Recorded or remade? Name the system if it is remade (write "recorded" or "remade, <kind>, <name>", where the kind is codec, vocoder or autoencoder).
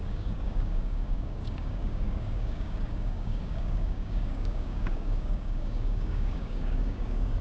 remade, codec, DAC